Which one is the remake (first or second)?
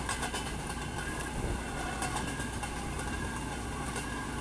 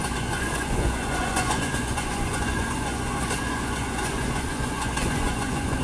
second